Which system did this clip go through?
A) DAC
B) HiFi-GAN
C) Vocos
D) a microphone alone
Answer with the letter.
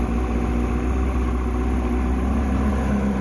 D